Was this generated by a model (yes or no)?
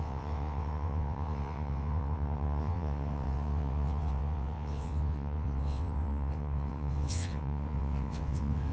yes